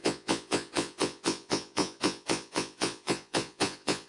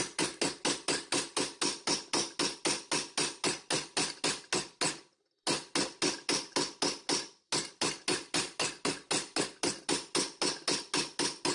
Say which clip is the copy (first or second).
first